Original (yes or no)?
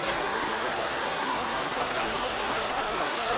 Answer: no